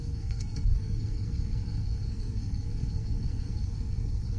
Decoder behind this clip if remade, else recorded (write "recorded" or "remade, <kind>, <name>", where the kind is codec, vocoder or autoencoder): remade, codec, SNAC